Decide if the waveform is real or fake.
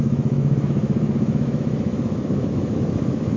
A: fake